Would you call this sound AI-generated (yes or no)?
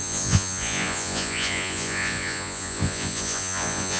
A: yes